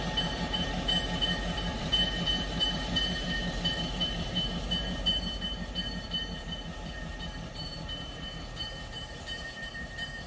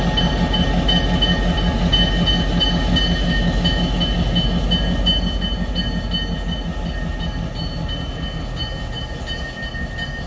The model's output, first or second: first